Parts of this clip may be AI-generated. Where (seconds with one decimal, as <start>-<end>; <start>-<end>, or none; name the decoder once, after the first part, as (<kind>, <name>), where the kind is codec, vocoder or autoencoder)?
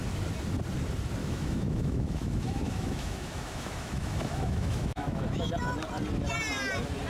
1.2-5.5 (autoencoder, DAC-VAE)